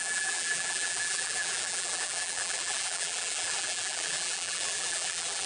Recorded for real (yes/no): no